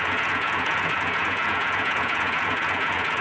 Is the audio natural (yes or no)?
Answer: no